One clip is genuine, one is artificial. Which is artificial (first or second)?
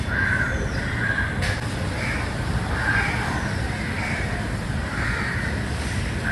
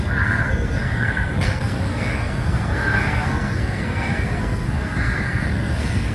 second